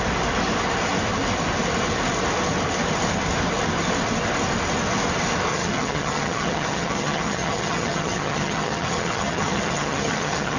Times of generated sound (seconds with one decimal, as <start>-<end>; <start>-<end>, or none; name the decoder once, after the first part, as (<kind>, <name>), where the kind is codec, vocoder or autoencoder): 5.5-10.6 (vocoder, HiFi-GAN)